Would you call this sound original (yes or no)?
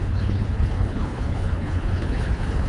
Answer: no